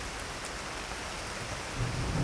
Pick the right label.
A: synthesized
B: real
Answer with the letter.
B